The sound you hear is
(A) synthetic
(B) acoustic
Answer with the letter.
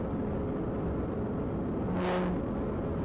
B